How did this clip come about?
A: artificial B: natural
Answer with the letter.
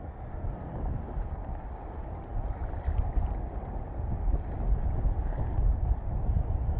B